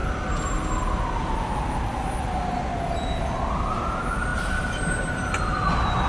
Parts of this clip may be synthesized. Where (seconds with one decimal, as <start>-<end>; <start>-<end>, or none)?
4.3-5.1